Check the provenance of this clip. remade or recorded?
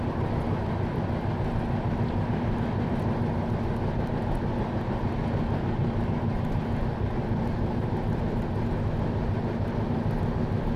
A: recorded